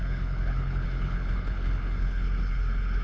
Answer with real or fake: fake